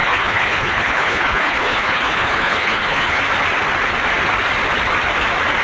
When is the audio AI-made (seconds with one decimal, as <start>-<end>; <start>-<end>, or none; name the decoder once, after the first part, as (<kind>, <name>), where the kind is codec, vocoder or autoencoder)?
0.0-3.2 (codec, HILCodec)